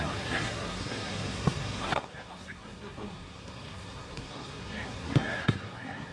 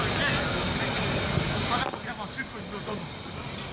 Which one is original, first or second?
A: second